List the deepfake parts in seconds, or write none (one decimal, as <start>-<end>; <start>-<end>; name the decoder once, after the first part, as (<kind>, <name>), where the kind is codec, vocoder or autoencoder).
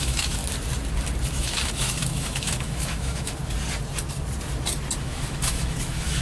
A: 0.0-0.4 (autoencoder, DAC-VAE); 1.3-3.4; 5.0-6.2